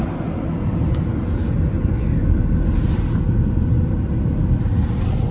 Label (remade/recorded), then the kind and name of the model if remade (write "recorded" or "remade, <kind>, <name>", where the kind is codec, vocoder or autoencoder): recorded